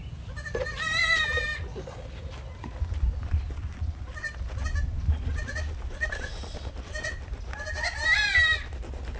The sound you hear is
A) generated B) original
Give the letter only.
B